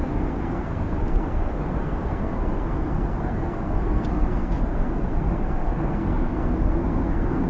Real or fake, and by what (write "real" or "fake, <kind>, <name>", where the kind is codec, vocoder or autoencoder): fake, codec, SNAC